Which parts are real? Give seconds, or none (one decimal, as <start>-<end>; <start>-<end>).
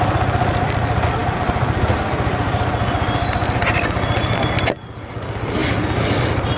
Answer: 0.0-6.6